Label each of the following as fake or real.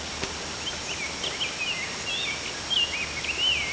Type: real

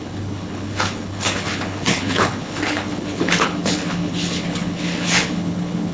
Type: fake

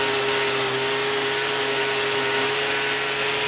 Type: real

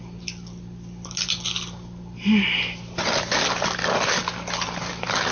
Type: real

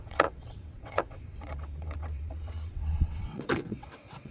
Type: fake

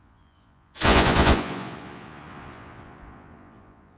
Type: fake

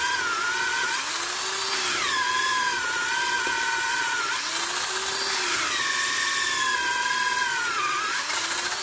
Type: real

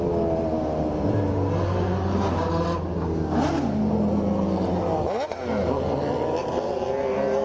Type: real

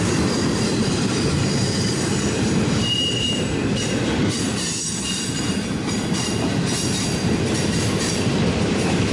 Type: fake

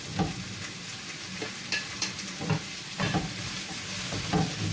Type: real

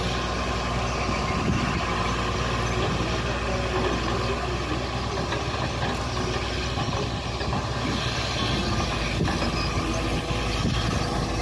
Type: real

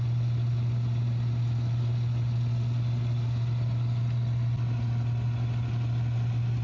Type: real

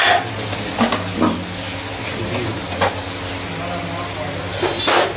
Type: real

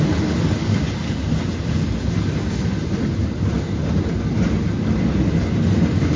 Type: real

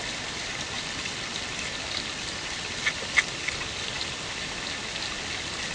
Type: real